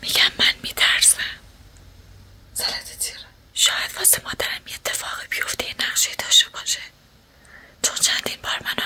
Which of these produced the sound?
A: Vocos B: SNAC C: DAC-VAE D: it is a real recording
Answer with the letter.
D